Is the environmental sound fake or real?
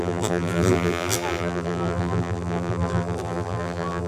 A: fake